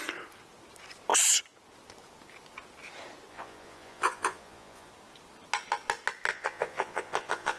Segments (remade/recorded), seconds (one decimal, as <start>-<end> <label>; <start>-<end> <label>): 0.0-3.3 recorded; 3.3-4.9 remade; 4.9-6.3 recorded; 6.3-7.6 remade